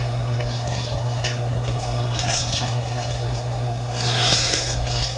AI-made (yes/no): yes